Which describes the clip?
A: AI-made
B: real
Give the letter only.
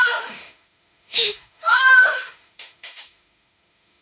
A